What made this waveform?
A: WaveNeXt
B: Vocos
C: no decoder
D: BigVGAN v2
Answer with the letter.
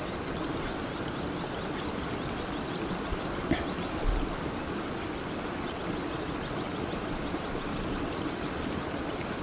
C